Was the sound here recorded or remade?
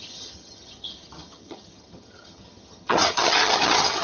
remade